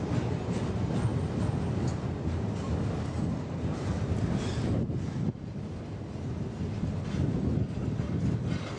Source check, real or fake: real